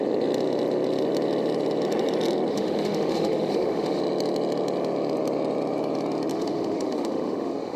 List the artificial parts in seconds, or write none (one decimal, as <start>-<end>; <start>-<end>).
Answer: 2.5-4.0; 6.3-7.8